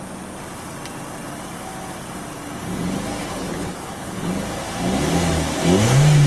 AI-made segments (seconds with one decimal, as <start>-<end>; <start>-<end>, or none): 3.2-4.3